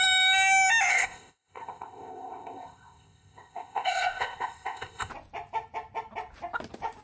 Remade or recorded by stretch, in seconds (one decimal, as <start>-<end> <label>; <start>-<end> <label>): 0.0-0.9 recorded; 0.9-5.1 remade; 5.1-7.0 recorded